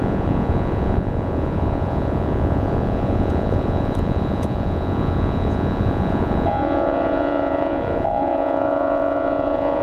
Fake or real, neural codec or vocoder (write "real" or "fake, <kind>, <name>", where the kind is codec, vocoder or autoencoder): fake, vocoder, Vocos